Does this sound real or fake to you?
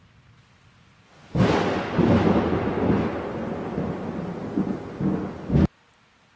real